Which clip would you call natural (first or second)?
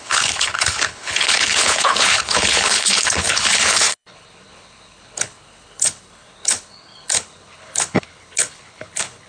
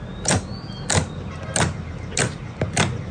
second